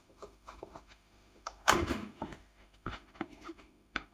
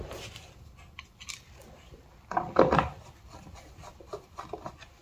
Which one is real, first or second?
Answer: second